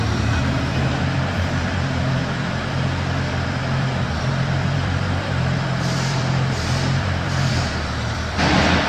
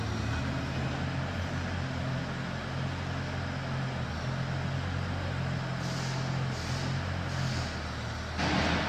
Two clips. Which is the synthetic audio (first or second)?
first